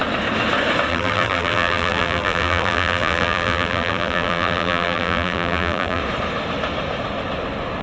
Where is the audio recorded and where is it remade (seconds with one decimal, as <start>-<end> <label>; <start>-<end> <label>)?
0.0-0.9 recorded; 0.9-6.0 remade; 6.0-7.8 recorded